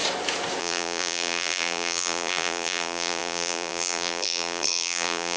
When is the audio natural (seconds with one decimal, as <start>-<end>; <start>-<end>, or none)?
0.0-0.6